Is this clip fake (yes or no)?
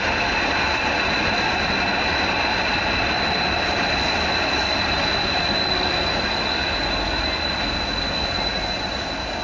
no